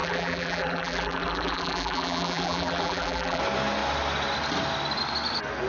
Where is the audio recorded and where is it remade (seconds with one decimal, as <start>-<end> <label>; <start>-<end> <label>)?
0.0-3.4 remade; 3.4-5.7 recorded